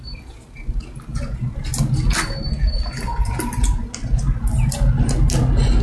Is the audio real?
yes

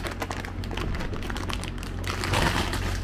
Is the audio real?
yes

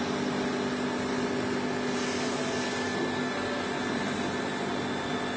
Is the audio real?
yes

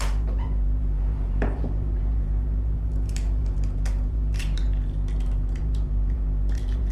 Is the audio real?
no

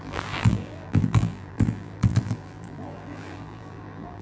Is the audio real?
no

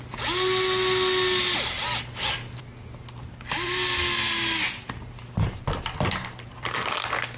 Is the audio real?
yes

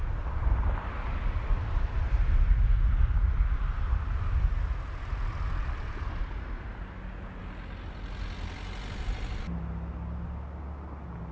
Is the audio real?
yes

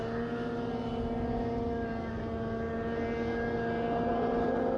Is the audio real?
yes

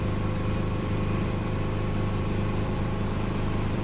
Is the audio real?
no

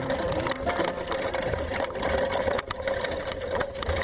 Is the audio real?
no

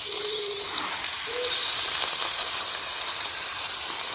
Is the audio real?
no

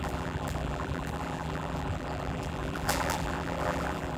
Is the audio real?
no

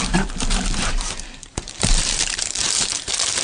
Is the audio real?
no